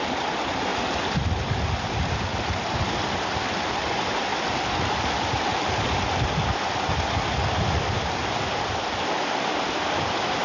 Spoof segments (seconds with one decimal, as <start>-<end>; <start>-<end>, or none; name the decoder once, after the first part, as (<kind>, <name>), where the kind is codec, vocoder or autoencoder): 0.0-0.7 (vocoder, BigVGAN v2); 1.3-4.3; 7.7-10.4